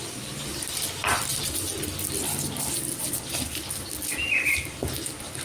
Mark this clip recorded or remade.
recorded